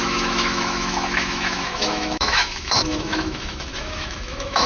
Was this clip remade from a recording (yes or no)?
yes